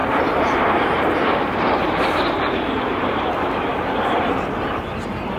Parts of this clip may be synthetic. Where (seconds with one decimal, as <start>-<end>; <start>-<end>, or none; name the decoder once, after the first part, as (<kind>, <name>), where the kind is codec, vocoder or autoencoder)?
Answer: 0.0-3.2 (vocoder, BigVGAN v2); 3.7-4.5